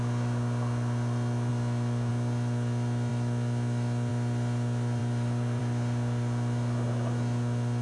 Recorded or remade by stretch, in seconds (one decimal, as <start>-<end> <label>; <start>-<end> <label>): 0.0-5.0 recorded; 5.0-5.6 remade; 5.6-7.8 recorded